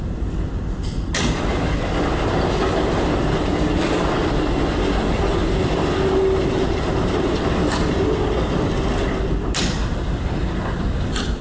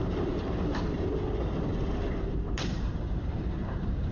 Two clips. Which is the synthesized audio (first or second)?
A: second